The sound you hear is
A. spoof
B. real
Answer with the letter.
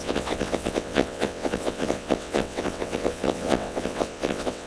A